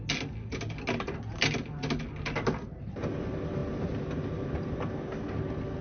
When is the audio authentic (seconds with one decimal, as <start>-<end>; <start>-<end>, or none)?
0.0-5.8